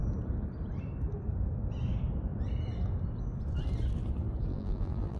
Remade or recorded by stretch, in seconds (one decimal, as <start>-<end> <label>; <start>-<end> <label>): 0.0-4.5 recorded; 4.5-5.2 remade